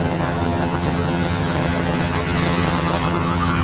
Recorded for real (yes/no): no